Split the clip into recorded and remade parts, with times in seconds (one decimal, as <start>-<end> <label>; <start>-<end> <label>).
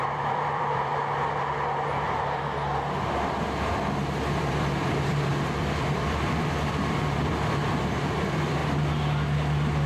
0.0-0.9 remade; 0.9-3.3 recorded; 3.3-8.6 remade; 8.6-9.9 recorded